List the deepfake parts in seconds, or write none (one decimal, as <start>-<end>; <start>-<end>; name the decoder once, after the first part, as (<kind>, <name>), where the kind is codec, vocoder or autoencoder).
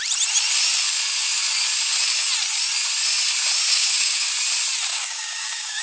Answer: 3.7-4.3 (codec, DAC); 4.9-5.8